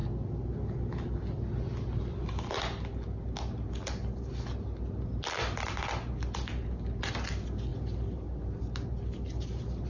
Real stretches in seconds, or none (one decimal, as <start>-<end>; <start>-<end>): 0.0-9.9